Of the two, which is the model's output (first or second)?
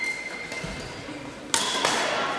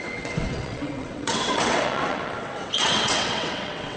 second